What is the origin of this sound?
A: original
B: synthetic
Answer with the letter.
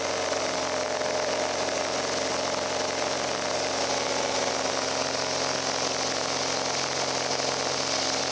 A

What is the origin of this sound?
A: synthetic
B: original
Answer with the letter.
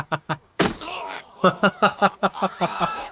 A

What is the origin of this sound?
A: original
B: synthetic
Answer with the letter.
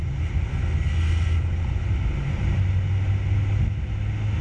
A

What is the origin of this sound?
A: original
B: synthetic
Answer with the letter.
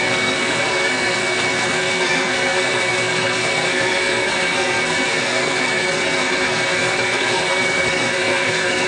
B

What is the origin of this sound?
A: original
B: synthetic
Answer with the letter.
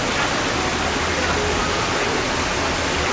A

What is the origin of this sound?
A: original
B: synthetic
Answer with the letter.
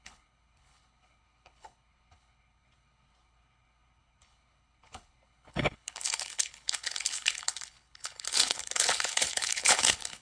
B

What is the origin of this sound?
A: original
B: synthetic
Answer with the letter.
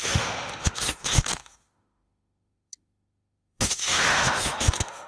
B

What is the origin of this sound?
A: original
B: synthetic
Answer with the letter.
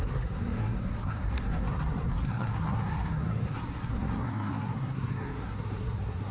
B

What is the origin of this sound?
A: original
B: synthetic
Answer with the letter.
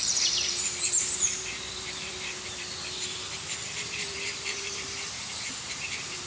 B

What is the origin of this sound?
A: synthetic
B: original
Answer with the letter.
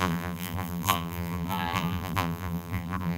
A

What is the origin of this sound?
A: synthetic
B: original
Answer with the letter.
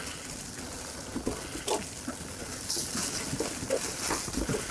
B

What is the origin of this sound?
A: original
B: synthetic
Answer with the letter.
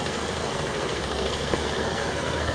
B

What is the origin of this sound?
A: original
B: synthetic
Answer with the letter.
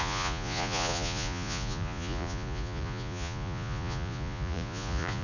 B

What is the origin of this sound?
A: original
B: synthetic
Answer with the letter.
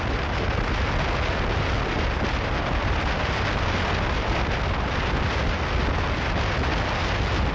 A